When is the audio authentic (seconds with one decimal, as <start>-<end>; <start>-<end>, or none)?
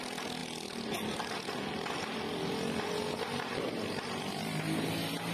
0.0-5.3